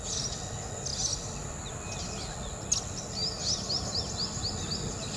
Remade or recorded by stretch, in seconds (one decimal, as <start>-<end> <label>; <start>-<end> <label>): 0.0-5.2 recorded